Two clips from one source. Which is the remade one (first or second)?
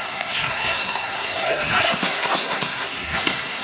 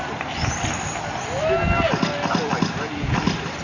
first